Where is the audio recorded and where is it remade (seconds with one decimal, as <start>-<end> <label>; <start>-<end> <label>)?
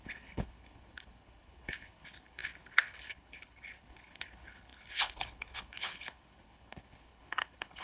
0.0-7.8 remade